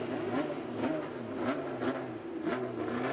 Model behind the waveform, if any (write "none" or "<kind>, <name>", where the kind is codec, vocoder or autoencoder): none